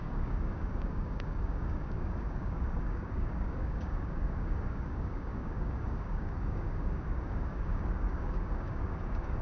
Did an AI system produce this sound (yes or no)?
yes